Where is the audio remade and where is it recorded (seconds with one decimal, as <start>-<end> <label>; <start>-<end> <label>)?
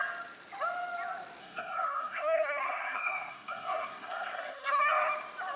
0.0-1.4 recorded; 1.4-4.8 remade; 4.8-5.6 recorded